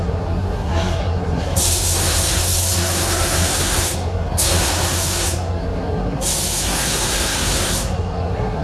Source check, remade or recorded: remade